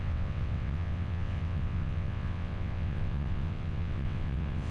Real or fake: fake